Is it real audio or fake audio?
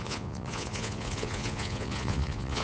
fake